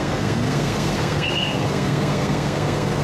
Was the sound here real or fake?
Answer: fake